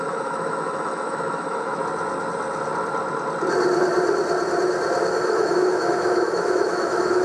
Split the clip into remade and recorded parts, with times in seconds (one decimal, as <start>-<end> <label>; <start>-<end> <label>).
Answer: 0.0-1.8 remade; 1.8-5.1 recorded; 5.1-7.2 remade